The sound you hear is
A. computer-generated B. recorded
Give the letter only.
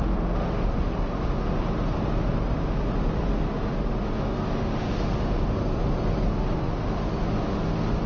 B